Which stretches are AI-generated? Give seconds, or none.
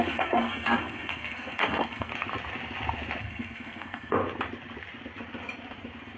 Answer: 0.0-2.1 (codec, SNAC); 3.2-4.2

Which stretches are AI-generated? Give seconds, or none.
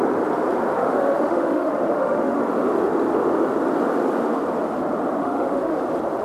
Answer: 0.8-2.4 (autoencoder, DAC-VAE); 5.2-5.8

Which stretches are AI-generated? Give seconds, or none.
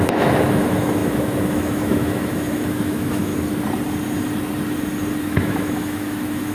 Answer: 0.0-3.3 (autoencoder, DAC-VAE); 5.2-6.5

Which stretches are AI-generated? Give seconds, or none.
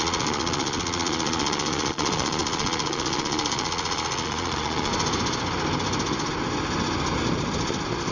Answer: 0.0-4.9 (vocoder, Vocos)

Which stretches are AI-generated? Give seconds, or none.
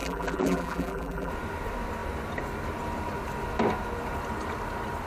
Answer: 0.0-1.3 (vocoder, BigVGAN v2)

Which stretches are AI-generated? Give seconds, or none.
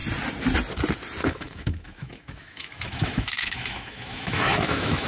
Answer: 1.3-5.1 (autoencoder, DAC-VAE)